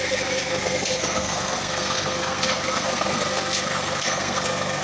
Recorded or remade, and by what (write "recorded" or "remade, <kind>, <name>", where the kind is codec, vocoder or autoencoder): remade, codec, SNAC